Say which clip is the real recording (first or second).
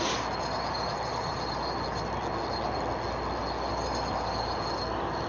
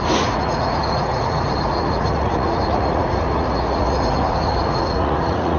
first